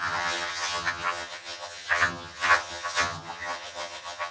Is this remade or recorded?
remade